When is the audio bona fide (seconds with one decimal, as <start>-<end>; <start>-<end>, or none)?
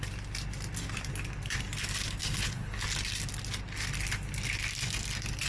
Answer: 0.0-2.2; 2.8-5.5